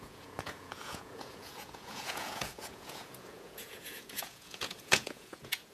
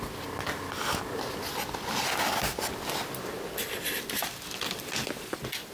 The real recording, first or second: second